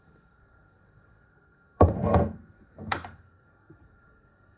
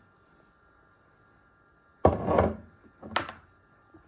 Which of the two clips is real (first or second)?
second